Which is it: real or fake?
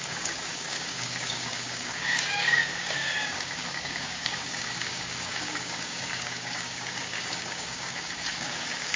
fake